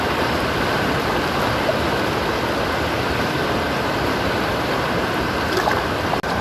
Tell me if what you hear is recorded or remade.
recorded